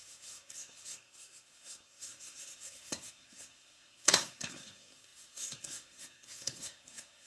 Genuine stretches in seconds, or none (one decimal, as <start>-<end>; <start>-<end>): none